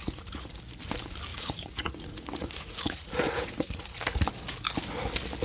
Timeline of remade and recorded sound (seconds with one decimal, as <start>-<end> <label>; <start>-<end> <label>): 0.0-0.6 remade; 0.6-1.3 recorded; 1.3-4.0 remade; 4.0-5.4 recorded